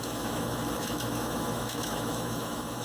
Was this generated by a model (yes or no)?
yes